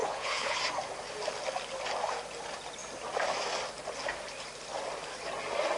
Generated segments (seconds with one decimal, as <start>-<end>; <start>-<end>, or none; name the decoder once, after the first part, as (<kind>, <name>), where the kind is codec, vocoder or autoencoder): 0.0-0.6 (codec, HILCodec)